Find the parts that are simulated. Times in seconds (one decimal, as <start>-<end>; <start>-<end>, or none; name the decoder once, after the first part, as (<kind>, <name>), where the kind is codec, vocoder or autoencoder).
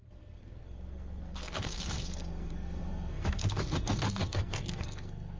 0.0-5.4 (codec, SNAC)